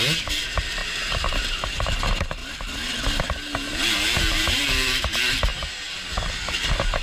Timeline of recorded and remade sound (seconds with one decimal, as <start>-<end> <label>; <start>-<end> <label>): 0.0-2.4 remade; 2.4-3.2 recorded; 3.2-7.0 remade